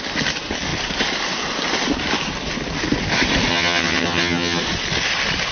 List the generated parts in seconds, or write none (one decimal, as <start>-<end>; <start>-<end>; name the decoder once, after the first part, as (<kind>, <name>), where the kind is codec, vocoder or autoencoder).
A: 3.5-4.6 (vocoder, HiFi-GAN)